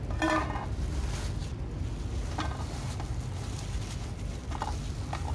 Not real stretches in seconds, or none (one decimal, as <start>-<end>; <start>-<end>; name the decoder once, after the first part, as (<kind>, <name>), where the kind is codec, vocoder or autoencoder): none